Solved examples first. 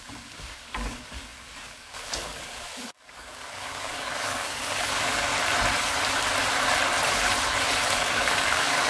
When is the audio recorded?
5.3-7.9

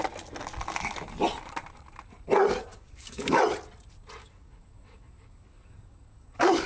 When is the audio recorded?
0.0-2.7; 3.4-4.2

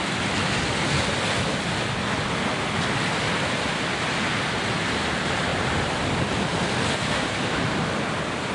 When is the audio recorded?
0.0-8.5

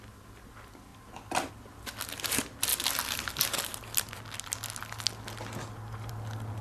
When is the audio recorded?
0.0-6.6

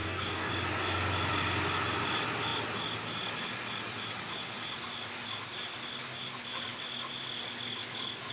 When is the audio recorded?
0.5-8.3

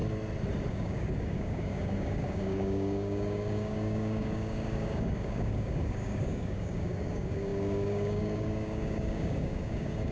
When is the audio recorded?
0.0-0.7

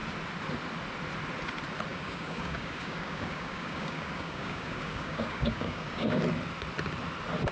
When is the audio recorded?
0.0-1.9; 6.2-7.5

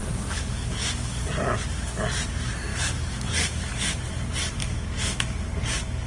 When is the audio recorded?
1.3-2.7; 3.7-4.6